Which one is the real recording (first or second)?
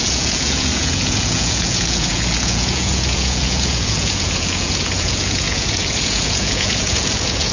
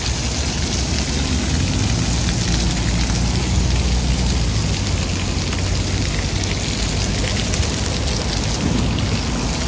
second